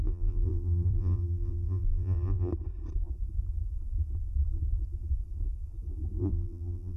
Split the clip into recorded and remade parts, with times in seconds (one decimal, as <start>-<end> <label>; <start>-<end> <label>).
0.0-2.5 remade; 2.5-6.2 recorded; 6.2-7.0 remade

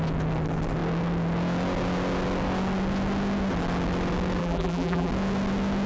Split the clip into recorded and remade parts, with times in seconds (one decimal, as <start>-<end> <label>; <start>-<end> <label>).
0.0-4.4 recorded; 4.4-5.1 remade; 5.1-5.9 recorded